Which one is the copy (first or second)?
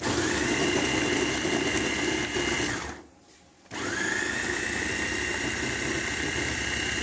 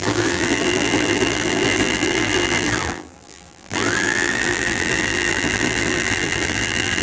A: second